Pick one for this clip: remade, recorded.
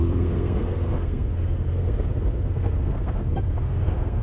remade